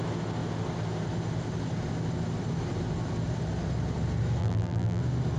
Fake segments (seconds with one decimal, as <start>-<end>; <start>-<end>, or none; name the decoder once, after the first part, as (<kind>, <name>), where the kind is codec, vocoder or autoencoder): 4.4-5.0 (vocoder, BigVGAN v2)